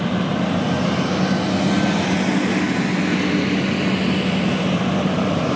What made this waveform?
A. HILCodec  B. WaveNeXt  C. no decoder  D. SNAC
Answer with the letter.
C